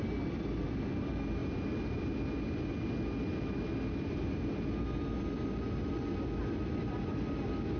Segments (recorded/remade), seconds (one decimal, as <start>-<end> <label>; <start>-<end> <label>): 0.0-7.8 recorded